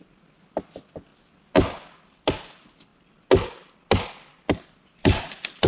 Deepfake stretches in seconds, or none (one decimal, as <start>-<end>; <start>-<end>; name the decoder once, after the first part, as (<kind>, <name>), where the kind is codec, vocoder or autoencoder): none